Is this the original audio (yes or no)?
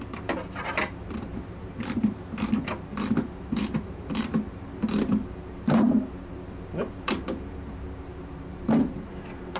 no